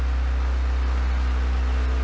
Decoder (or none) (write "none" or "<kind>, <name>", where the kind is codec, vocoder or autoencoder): none